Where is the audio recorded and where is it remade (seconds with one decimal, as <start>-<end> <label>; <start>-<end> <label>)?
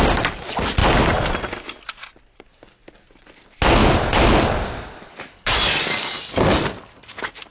0.0-0.8 recorded; 0.8-1.4 remade; 1.4-3.8 recorded; 3.8-6.3 remade; 6.3-7.5 recorded